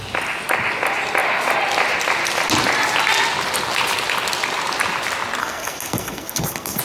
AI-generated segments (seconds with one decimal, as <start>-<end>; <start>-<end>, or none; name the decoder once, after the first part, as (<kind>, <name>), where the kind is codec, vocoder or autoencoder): 5.4-6.8 (codec, SNAC)